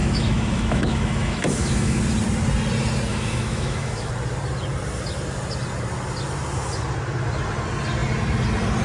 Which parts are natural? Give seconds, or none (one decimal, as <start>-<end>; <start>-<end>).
2.0-3.1; 4.1-8.8